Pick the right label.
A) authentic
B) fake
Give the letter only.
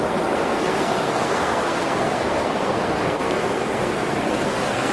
B